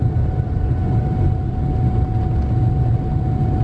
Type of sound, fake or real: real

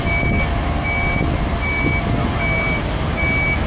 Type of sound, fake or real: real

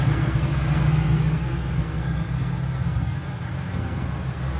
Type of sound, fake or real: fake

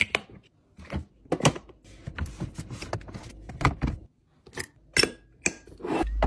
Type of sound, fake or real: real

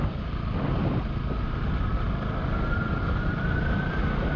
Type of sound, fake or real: real